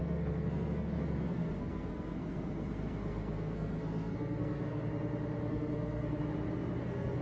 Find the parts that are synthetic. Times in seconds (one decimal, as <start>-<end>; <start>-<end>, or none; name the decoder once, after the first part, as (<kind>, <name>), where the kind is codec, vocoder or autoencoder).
0.0-4.9 (codec, SNAC); 5.4-6.2; 6.8-7.2